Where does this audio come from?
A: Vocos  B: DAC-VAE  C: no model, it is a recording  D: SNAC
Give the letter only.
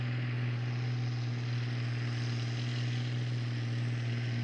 C